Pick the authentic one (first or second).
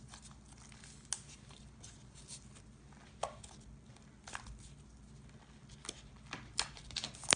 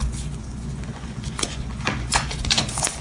first